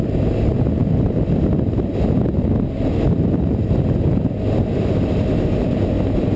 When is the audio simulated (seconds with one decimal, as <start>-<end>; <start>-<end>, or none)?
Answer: none